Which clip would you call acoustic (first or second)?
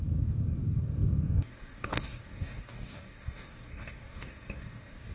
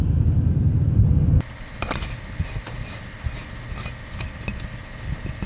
second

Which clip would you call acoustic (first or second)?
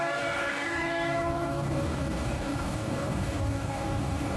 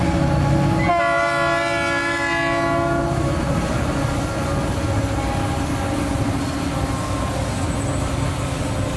second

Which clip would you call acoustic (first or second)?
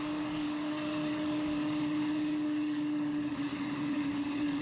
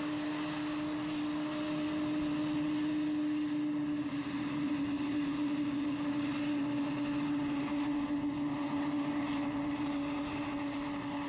second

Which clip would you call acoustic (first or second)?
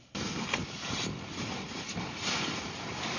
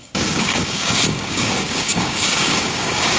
first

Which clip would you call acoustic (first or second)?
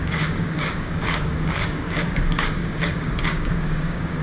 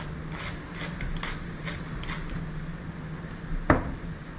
second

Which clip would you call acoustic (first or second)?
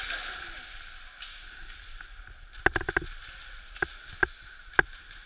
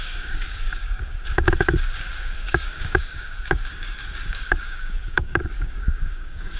first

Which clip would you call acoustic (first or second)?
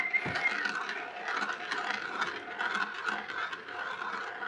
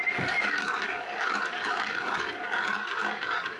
first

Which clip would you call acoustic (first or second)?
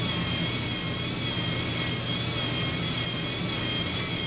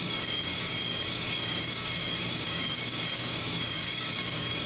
first